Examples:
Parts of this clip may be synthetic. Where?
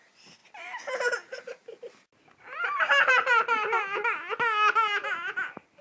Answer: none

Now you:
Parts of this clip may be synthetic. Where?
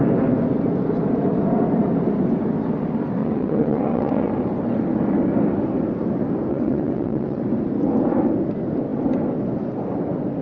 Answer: 3.2-4.3 (vocoder, WaveNeXt); 6.5-7.4